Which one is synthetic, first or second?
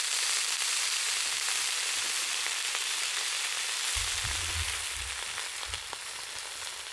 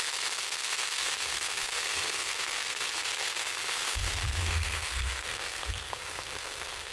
second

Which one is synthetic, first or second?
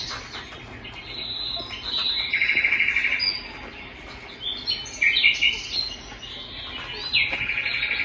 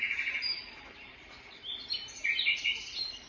second